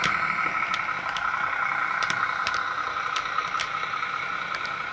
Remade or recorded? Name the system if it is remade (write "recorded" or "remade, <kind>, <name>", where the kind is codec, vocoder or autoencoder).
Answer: recorded